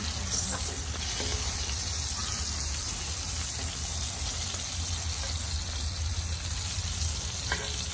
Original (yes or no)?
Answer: yes